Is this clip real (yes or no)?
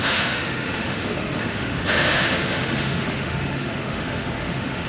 no